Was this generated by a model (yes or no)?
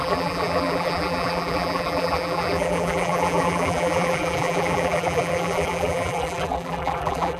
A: yes